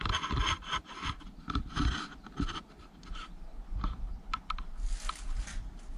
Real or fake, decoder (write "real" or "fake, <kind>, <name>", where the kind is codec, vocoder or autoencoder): real